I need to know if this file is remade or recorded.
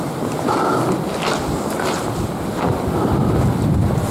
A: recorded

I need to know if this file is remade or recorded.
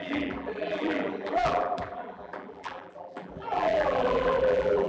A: remade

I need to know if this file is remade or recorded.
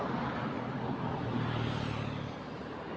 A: remade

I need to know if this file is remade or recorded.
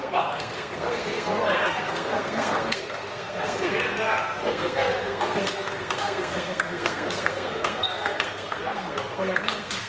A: remade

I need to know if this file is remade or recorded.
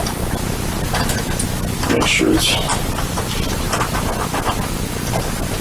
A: recorded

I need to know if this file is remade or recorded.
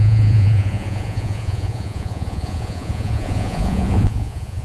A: remade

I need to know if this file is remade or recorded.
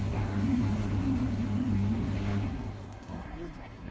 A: remade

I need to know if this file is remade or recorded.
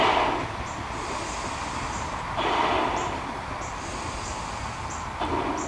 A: recorded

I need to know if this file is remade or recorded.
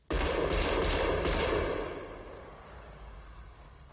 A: recorded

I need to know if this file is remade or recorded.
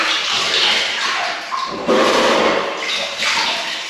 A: recorded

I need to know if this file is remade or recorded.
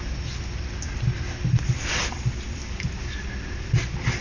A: remade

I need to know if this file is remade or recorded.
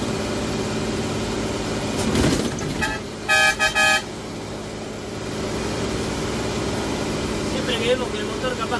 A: recorded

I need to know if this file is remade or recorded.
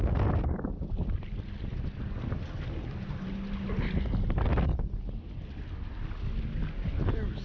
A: recorded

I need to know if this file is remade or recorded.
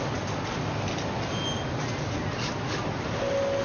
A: recorded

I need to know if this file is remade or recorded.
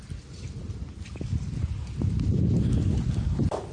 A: recorded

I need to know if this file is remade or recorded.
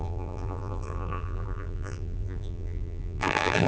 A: remade